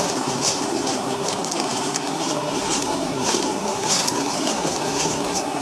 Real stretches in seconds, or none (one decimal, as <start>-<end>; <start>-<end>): none